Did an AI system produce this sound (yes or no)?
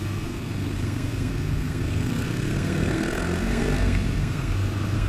yes